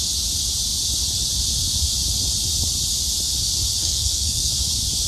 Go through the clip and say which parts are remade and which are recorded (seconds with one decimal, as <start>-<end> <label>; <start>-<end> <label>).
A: 0.0-3.8 recorded; 3.8-4.5 remade; 4.5-5.1 recorded